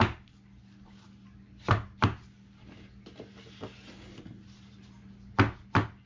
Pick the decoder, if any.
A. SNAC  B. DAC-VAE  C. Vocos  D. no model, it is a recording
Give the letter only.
D